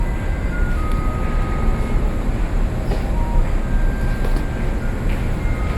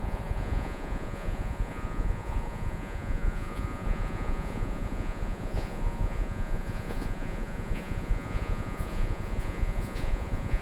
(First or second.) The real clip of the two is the first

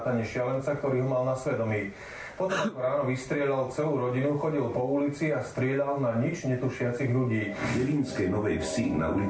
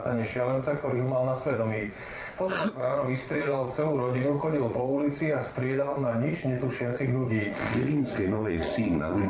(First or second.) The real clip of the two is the first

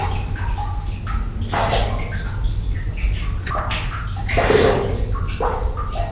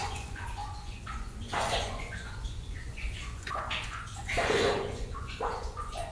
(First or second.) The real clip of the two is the first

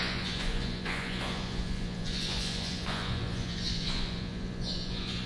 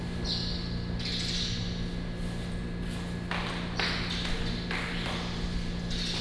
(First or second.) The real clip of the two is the second